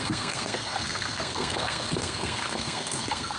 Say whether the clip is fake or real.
fake